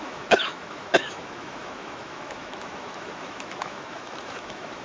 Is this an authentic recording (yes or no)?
no